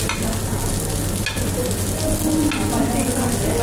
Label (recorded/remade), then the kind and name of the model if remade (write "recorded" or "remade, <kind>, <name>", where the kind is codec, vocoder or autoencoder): recorded